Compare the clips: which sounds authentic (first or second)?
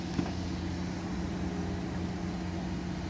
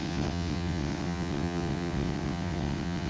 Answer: first